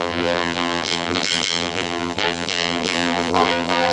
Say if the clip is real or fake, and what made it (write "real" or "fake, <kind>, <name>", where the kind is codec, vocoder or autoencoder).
fake, vocoder, BigVGAN v2